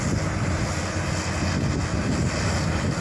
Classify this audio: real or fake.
real